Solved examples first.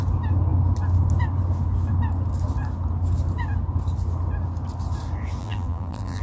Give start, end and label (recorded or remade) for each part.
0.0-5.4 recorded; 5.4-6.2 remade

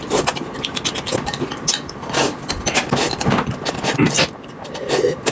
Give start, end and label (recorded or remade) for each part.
0.0-5.3 recorded

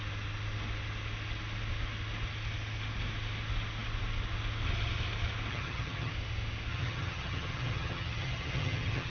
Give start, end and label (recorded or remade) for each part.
0.0-5.5 recorded; 5.5-6.1 remade; 6.1-6.7 recorded; 6.7-9.1 remade

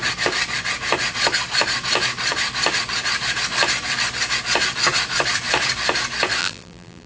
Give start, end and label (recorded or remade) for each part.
0.0-6.4 recorded; 6.4-7.1 remade

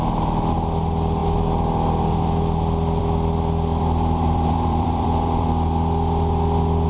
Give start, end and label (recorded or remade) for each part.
0.0-3.7 recorded; 3.7-5.5 remade; 5.5-6.9 recorded